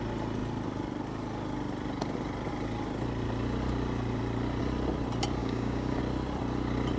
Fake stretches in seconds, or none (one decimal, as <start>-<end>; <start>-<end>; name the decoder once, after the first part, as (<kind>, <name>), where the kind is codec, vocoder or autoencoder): 5.4-6.0 (codec, DAC)